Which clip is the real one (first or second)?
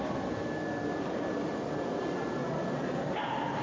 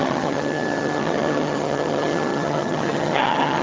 first